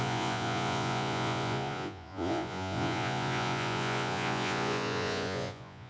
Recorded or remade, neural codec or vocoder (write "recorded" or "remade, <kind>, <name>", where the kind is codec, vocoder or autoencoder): remade, vocoder, Vocos